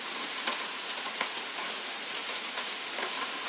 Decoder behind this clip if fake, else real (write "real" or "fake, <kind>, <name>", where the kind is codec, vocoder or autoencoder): fake, vocoder, Vocos